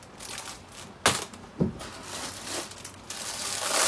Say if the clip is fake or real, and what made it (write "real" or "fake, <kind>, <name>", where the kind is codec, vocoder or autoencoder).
real